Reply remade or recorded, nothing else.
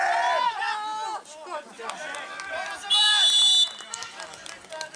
recorded